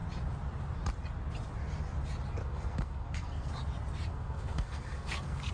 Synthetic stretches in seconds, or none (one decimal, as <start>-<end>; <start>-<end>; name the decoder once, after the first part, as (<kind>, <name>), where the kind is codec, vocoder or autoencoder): 2.4-3.5 (codec, SNAC); 4.1-5.5